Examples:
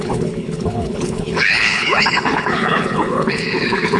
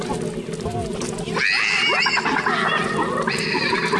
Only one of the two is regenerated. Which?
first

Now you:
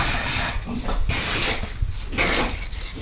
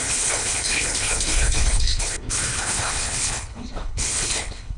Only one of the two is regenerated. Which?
second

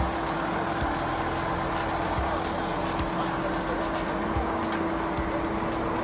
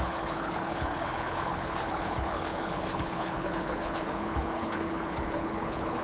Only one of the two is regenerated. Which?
second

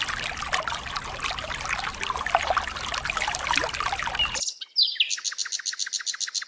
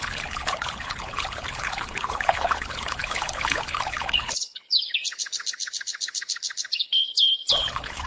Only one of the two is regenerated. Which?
second